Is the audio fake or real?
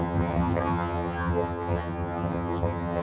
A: fake